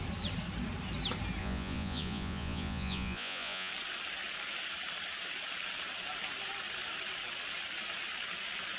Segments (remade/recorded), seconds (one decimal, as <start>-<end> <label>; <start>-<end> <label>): 0.0-1.4 recorded; 1.4-3.7 remade; 3.7-8.8 recorded

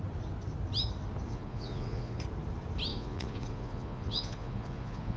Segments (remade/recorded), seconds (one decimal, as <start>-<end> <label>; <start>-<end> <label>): 0.0-1.3 recorded; 1.3-2.2 remade; 2.2-2.9 recorded; 2.9-5.2 remade

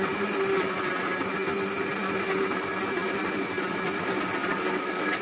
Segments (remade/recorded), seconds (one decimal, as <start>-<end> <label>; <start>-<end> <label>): 0.0-4.5 recorded; 4.5-5.2 remade